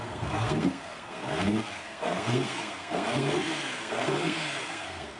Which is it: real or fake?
fake